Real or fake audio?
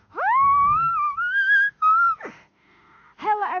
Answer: fake